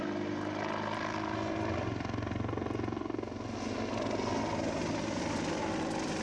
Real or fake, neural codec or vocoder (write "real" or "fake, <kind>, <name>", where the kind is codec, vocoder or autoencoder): real